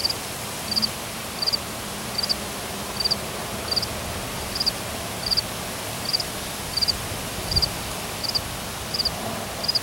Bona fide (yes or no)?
yes